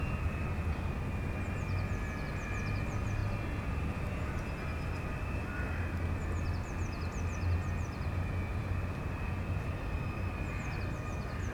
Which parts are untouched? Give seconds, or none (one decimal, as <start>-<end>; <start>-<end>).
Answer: 0.0-8.5; 10.2-11.5